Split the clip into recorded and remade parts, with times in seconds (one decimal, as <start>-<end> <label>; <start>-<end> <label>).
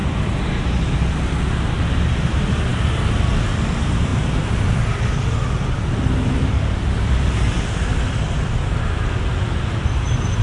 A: 0.0-1.4 recorded; 1.4-2.7 remade; 2.7-3.3 recorded; 3.3-10.4 remade